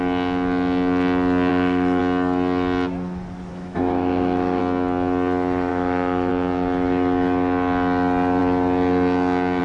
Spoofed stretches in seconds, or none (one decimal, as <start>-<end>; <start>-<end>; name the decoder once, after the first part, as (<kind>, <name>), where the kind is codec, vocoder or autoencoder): 1.5-2.0 (autoencoder, DAC-VAE); 3.5-4.6; 5.7-6.3